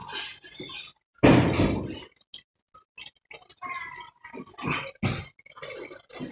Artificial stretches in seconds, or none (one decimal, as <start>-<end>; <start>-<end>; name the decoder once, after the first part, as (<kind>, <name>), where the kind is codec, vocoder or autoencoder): none